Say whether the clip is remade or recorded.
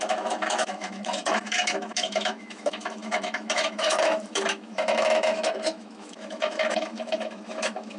remade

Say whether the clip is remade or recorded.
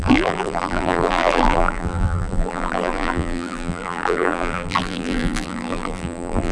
remade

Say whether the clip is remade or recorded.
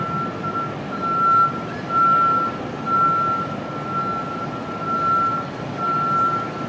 recorded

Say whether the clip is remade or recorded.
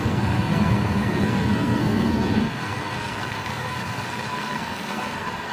remade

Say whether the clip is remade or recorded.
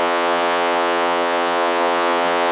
remade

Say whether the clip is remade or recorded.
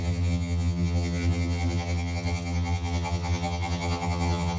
remade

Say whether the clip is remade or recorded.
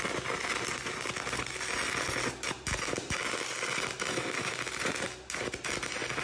recorded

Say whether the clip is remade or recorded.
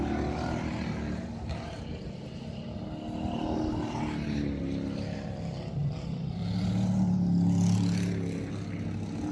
recorded